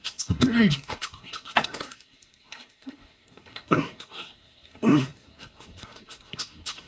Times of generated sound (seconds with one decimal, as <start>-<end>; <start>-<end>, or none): 0.0-6.9